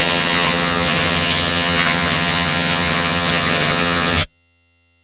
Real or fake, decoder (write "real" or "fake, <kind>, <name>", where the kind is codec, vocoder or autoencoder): fake, vocoder, HiFi-GAN